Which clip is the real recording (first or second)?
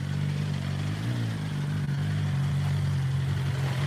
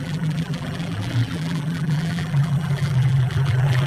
first